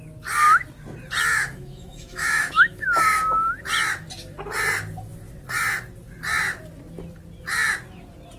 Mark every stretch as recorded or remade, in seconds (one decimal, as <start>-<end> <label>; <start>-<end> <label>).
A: 0.0-1.3 recorded; 1.3-3.5 remade; 3.5-8.4 recorded